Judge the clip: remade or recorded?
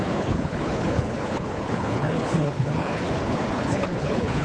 remade